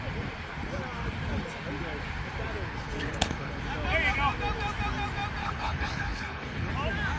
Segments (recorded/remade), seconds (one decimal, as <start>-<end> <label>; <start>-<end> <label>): 0.0-2.7 recorded; 2.7-3.6 remade; 3.6-5.4 recorded; 5.4-6.7 remade; 6.7-7.2 recorded